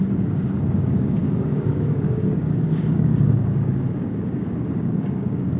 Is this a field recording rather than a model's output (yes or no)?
no